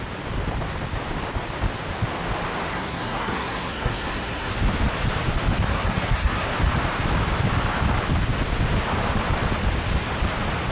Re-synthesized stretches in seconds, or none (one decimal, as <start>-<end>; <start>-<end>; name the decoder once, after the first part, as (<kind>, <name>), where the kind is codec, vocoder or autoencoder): 2.7-4.5 (codec, SNAC); 5.7-6.5